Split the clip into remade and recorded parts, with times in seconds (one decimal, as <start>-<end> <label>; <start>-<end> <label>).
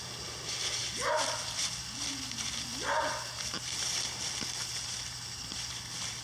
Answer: 0.0-6.2 recorded